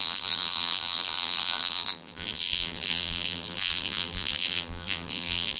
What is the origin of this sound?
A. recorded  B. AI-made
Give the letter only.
B